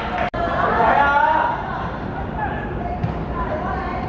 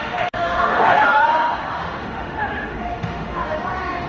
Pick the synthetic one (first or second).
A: second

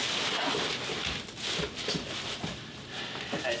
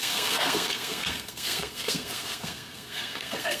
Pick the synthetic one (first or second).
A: second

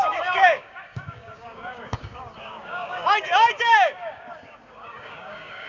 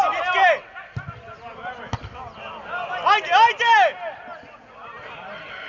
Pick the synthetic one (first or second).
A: first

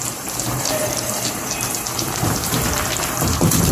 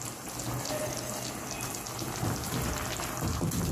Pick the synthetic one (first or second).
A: first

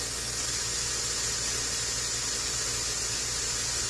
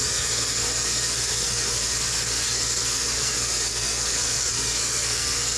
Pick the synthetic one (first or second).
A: second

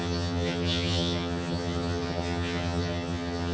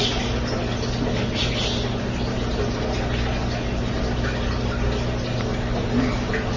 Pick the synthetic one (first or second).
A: first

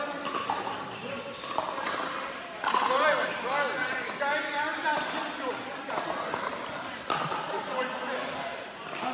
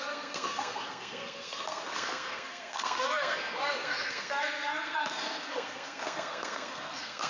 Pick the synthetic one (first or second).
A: second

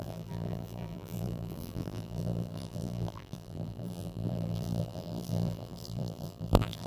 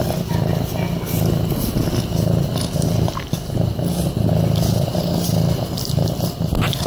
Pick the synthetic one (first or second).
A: first